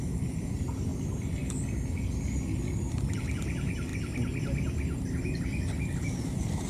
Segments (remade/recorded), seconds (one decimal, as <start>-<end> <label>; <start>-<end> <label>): 0.0-0.9 remade; 0.9-3.1 recorded; 3.1-3.9 remade; 3.9-6.0 recorded; 6.0-6.7 remade